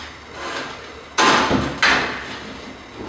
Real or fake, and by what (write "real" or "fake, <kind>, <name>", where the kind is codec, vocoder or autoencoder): real